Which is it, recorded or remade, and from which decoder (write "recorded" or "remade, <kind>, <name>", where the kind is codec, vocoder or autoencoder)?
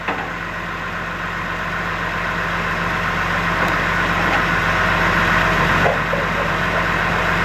recorded